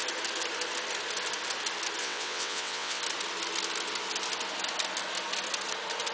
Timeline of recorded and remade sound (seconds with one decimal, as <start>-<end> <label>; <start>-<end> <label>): 0.0-2.0 recorded; 2.0-3.0 remade; 3.0-6.1 recorded

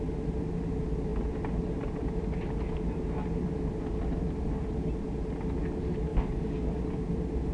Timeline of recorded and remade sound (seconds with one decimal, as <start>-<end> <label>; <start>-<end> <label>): 0.0-6.1 recorded; 6.1-6.8 remade; 6.8-7.5 recorded

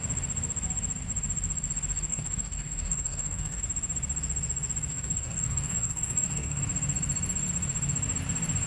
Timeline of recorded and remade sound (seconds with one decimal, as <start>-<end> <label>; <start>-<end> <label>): 0.0-2.1 recorded; 2.1-3.6 remade; 3.6-4.9 recorded; 4.9-6.6 remade; 6.6-8.7 recorded

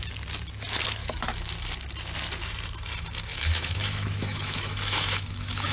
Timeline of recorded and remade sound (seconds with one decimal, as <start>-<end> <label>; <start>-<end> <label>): 0.0-1.0 recorded; 1.0-1.5 remade; 1.5-3.3 recorded; 3.3-5.7 remade

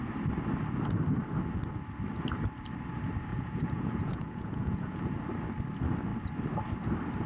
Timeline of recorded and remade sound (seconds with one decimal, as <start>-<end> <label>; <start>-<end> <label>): 0.0-3.3 recorded; 3.3-5.1 remade; 5.1-7.3 recorded

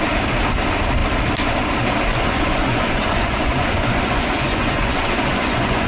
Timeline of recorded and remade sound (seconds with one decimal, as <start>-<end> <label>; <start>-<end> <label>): 0.0-2.1 recorded; 2.1-5.9 remade

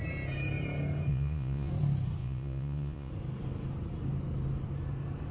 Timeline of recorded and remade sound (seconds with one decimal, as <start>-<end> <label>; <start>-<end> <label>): 0.0-1.1 recorded; 1.1-1.7 remade; 1.7-2.2 recorded; 2.2-3.1 remade; 3.1-5.3 recorded

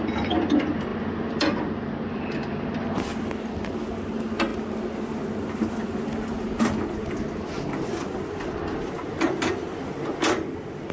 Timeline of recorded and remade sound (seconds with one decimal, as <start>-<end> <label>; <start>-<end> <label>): 0.0-10.9 recorded